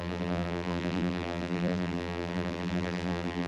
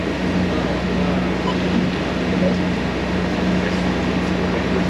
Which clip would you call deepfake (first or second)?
first